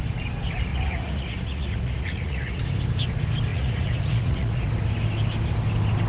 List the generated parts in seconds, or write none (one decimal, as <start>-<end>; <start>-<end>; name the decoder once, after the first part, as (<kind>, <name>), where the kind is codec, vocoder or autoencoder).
0.7-2.6 (vocoder, Vocos); 3.5-4.7